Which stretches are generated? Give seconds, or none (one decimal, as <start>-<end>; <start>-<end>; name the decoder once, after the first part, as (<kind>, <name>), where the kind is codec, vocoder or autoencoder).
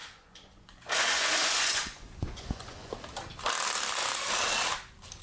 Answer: 0.0-2.9 (vocoder, Vocos)